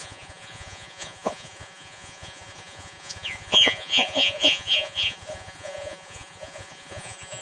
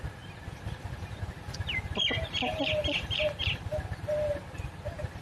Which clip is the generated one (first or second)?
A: first